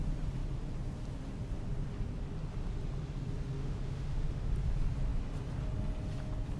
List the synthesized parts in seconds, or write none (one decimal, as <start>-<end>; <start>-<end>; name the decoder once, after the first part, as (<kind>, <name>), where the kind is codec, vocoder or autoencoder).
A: 3.6-4.5 (autoencoder, DAC-VAE)